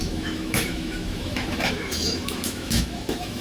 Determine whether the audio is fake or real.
fake